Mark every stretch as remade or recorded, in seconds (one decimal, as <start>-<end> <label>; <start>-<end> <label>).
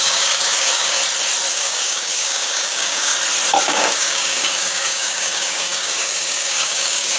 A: 0.0-1.0 remade; 1.0-1.5 recorded; 1.5-3.1 remade; 3.1-3.6 recorded; 3.6-7.2 remade